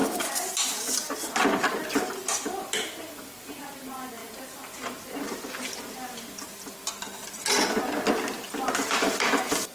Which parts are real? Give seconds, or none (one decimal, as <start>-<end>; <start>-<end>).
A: 0.0-9.7